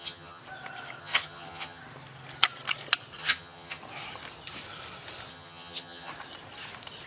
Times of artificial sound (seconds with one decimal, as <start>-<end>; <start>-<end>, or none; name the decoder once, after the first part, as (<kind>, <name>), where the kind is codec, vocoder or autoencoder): 0.0-0.4 (vocoder, HiFi-GAN); 1.0-1.8; 3.2-3.8; 5.3-6.1